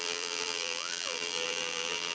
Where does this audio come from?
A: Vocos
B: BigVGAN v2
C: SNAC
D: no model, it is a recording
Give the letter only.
B